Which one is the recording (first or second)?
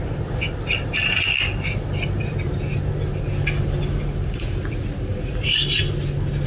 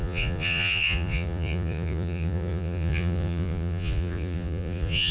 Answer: first